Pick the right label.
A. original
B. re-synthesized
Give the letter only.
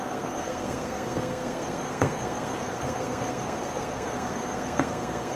B